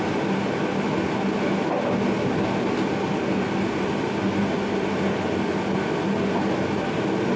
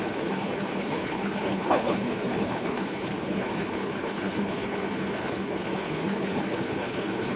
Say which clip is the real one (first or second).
first